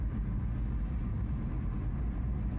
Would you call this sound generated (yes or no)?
no